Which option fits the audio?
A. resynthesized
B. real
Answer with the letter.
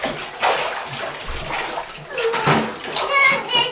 B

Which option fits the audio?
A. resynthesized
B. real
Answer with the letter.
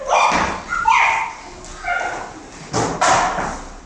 B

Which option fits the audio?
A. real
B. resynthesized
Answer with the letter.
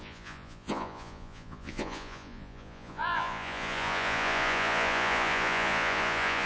B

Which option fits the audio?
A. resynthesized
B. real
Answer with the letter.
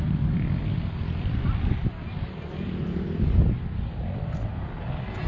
B